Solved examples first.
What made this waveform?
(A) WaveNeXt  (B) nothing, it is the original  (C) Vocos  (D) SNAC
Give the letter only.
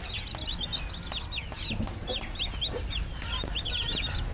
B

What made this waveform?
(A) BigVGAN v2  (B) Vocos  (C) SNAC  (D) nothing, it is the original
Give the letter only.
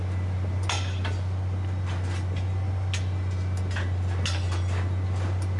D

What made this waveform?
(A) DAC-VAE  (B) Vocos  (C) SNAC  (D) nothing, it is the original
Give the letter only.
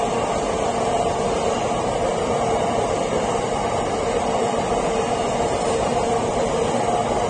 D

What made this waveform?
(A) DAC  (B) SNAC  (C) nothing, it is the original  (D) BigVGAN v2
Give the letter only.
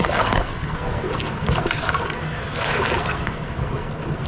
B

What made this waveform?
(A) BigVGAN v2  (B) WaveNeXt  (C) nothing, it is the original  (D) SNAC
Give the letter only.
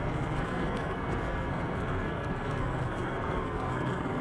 D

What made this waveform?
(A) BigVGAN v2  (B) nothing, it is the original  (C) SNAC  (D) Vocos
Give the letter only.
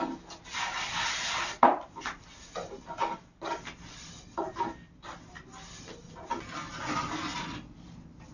B